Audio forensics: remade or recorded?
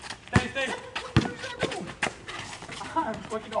recorded